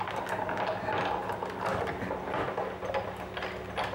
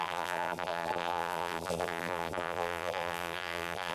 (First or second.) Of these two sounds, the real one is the first